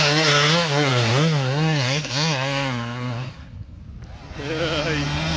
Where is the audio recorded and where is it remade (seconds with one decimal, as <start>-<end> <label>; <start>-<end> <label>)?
0.0-3.8 remade; 3.8-5.4 recorded